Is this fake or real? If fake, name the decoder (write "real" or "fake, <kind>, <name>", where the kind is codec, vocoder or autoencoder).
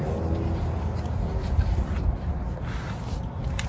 real